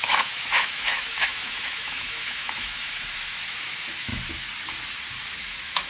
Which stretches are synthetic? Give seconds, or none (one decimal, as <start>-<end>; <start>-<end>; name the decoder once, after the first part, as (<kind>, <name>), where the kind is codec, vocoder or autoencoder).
0.0-4.1 (autoencoder, DAC-VAE); 5.4-5.9